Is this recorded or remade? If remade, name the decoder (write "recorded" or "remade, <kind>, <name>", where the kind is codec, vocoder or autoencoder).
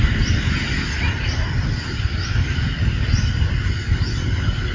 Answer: recorded